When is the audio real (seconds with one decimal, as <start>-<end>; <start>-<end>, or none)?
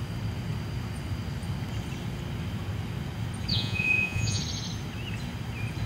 0.0-3.5; 4.4-5.9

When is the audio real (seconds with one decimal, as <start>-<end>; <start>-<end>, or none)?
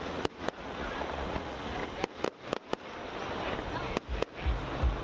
1.8-5.0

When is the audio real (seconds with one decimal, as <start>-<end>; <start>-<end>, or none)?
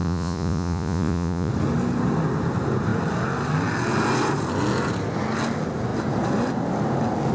1.5-7.3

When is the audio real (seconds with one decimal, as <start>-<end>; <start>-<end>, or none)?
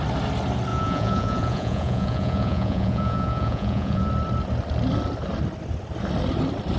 0.0-0.7; 4.1-6.8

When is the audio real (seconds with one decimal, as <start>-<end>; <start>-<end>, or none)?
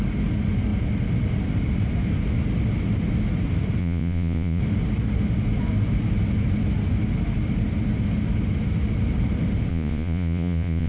0.0-3.8; 4.6-9.7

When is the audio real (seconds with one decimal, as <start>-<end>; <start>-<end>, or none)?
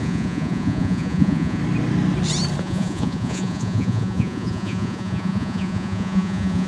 1.6-2.6